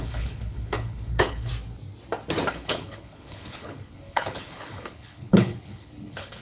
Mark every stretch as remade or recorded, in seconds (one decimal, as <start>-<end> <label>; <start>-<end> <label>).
0.0-1.5 remade; 1.5-2.5 recorded; 2.5-6.4 remade